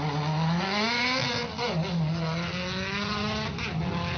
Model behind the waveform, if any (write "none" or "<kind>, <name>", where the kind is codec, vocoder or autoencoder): none